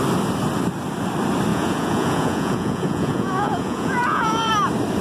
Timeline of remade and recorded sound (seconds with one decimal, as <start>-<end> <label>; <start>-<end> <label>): 0.0-1.5 recorded; 1.5-4.5 remade; 4.5-5.0 recorded